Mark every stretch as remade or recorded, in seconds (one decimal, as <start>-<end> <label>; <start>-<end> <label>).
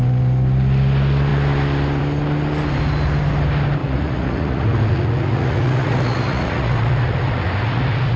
0.0-3.8 recorded; 3.8-8.2 remade